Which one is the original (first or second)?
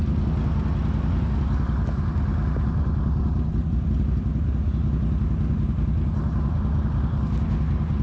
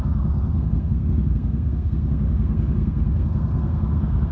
first